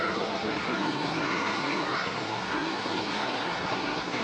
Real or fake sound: fake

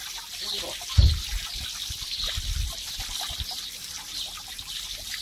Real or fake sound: real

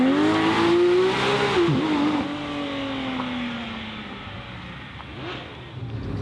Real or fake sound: real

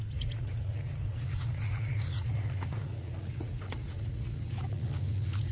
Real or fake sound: fake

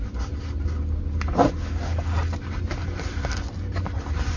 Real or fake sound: real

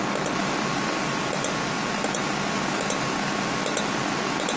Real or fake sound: real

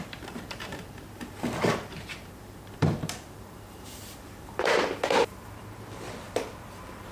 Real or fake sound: fake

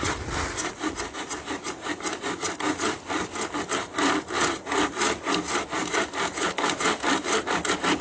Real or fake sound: real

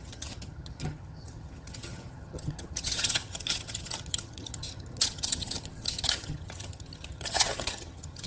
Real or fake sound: fake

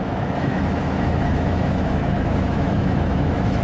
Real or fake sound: fake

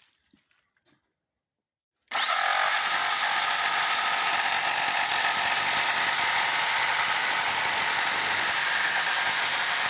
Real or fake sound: real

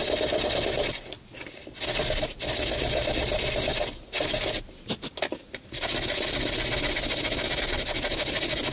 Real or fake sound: real